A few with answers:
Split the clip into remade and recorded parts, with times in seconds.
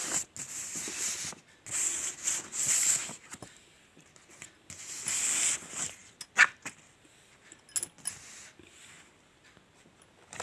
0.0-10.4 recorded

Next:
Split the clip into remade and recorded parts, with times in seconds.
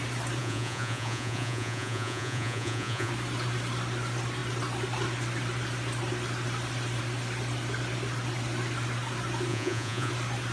0.0-0.4 recorded; 0.4-3.1 remade; 3.1-9.5 recorded; 9.5-10.1 remade; 10.1-10.5 recorded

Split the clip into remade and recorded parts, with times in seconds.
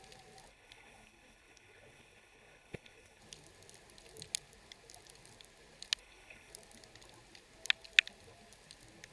0.0-0.5 recorded; 0.5-3.2 remade; 3.2-6.0 recorded; 6.0-6.5 remade; 6.5-9.1 recorded